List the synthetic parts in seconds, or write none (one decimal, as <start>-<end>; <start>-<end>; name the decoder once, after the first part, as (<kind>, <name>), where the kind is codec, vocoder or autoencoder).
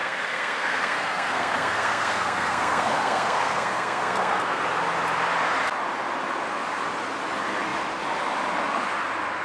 0.0-4.6 (codec, SNAC)